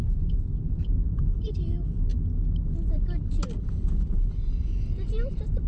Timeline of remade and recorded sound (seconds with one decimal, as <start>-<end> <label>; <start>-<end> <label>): 0.0-2.1 remade; 2.1-3.6 recorded; 3.6-5.7 remade